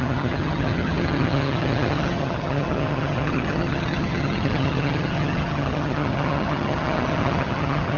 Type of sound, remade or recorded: remade